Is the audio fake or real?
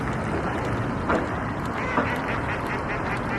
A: real